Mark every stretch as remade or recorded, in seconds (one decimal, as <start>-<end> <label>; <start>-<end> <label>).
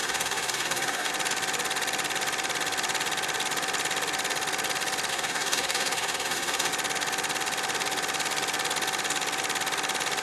0.0-1.1 remade; 1.1-5.1 recorded; 5.1-6.7 remade; 6.7-10.2 recorded